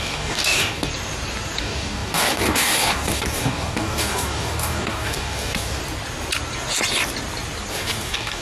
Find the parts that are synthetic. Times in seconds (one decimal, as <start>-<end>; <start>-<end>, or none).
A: 0.0-0.9; 1.6-5.8; 7.7-8.4